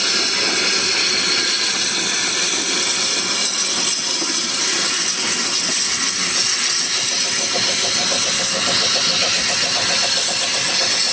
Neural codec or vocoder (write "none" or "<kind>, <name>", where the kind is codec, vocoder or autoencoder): none